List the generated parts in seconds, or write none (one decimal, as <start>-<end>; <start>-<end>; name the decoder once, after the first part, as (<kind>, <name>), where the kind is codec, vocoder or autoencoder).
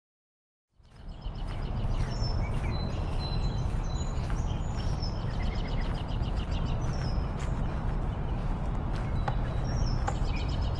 none